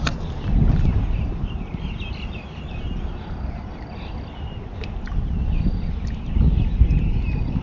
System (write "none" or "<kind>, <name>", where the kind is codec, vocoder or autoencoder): none